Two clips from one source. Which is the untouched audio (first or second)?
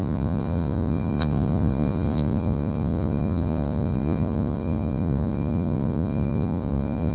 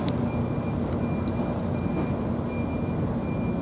second